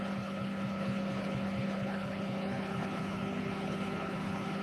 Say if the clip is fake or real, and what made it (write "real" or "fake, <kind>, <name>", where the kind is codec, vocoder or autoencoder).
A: fake, codec, HILCodec